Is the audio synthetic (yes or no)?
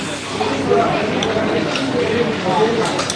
no